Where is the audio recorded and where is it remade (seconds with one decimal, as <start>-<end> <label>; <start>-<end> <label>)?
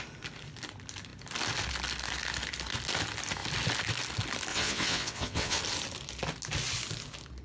0.0-4.5 recorded; 4.5-5.6 remade; 5.6-7.4 recorded